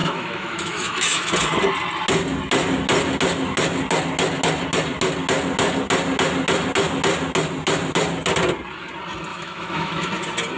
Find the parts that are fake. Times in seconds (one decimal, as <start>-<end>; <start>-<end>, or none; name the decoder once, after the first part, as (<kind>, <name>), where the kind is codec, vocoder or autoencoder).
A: 0.0-1.3 (autoencoder, DAC-VAE); 9.3-10.1